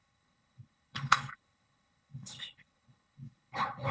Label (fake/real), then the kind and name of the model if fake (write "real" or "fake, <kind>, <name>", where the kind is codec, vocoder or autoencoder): fake, codec, HILCodec